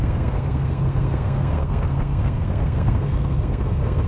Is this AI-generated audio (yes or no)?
yes